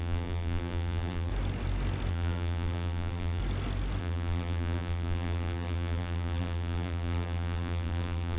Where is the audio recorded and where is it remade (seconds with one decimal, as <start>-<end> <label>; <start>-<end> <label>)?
0.0-1.3 remade; 1.3-2.1 recorded; 2.1-3.4 remade; 3.4-4.0 recorded; 4.0-8.4 remade